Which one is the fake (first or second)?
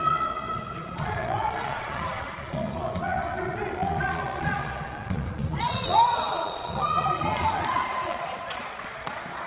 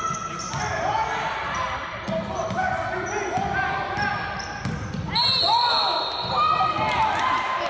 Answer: first